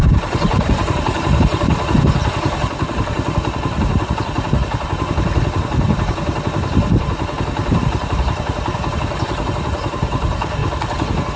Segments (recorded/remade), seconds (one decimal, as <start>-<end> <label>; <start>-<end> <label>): 0.0-10.6 remade; 10.6-11.4 recorded

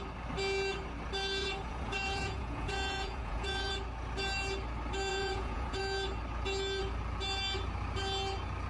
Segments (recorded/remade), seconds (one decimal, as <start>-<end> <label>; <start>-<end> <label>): 0.0-1.4 recorded; 1.4-3.7 remade; 3.7-5.1 recorded; 5.1-5.8 remade; 5.8-8.7 recorded

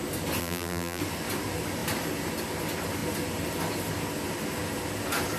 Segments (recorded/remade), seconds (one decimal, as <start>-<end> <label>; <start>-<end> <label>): 0.0-0.4 recorded; 0.4-1.0 remade; 1.0-5.4 recorded

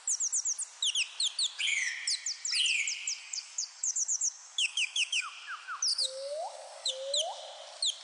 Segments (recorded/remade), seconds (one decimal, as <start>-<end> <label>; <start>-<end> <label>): 0.0-3.2 recorded; 3.2-5.3 remade; 5.3-5.9 recorded; 5.9-6.9 remade; 6.9-8.0 recorded

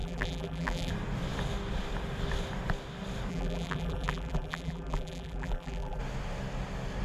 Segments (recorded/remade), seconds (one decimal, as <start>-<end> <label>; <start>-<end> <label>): 0.0-0.9 remade; 0.9-3.3 recorded; 3.3-6.0 remade; 6.0-7.0 recorded